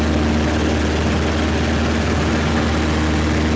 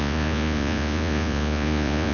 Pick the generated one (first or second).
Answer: second